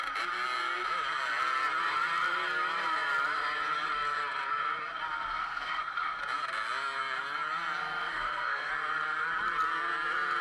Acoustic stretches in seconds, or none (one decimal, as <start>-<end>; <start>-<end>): 0.0-5.4; 6.2-7.8; 8.7-10.4